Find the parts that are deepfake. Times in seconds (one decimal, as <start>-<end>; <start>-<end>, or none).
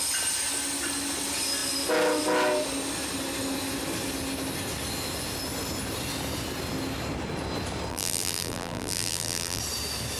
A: 7.9-9.6